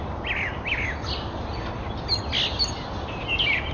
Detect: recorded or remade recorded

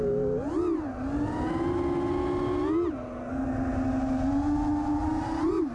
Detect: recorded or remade recorded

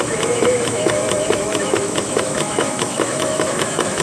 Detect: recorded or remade remade